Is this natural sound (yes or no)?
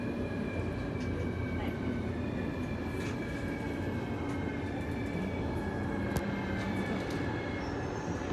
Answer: yes